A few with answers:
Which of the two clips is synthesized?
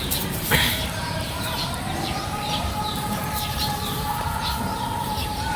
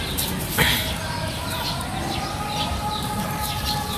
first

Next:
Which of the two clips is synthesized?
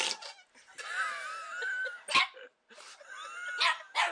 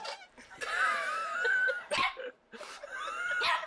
second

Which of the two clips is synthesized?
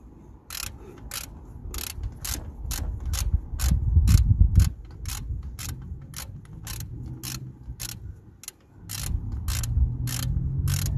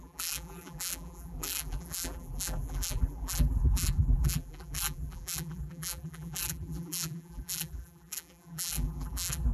second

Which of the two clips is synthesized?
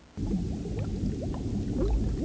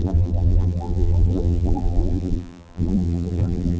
second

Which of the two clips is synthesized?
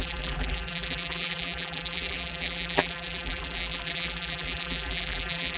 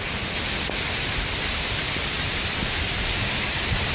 first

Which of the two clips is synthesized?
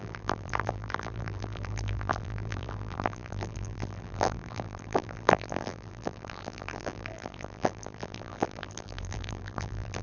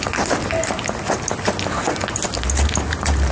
first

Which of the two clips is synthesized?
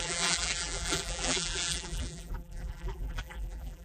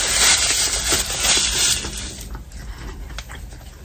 first